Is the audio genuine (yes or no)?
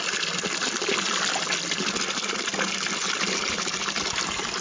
yes